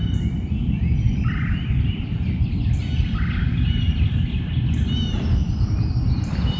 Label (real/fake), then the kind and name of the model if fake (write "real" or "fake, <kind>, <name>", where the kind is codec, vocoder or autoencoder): real